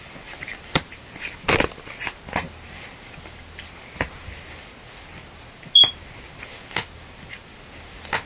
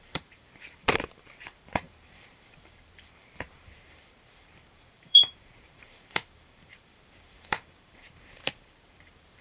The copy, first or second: second